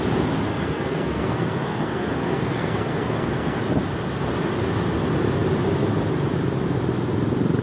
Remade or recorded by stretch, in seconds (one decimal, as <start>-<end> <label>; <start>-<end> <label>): 0.0-0.5 recorded; 0.5-3.6 remade; 3.6-7.6 recorded